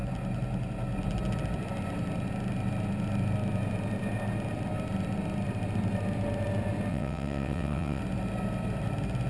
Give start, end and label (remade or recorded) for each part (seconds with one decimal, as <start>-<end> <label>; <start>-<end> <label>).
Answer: 0.0-6.9 recorded; 6.9-8.0 remade; 8.0-9.3 recorded